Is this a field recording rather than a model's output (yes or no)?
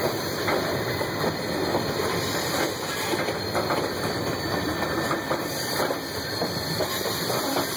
no